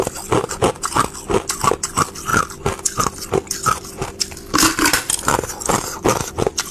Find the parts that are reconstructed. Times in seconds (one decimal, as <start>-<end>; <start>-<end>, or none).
none